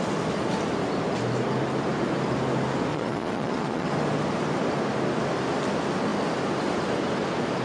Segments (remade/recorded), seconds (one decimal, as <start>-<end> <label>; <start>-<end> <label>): 0.0-2.9 recorded; 2.9-3.9 remade; 3.9-7.6 recorded